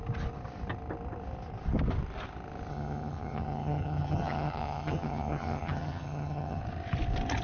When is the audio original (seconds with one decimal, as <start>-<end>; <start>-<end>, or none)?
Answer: 0.0-2.7; 6.6-7.4